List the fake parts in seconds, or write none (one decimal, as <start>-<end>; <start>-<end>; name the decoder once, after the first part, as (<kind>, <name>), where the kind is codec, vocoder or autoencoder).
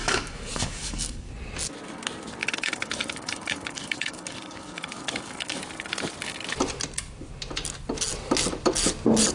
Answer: 0.0-1.3 (codec, DAC); 2.4-5.6